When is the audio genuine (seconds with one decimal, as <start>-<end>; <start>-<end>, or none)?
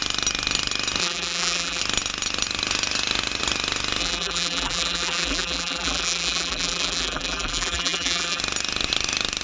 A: 0.0-1.0; 1.8-4.0; 8.4-9.4